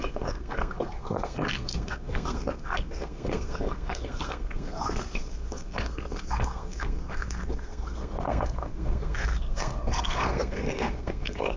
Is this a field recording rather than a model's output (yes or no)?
no